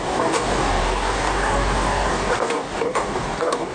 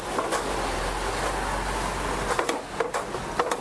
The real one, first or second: second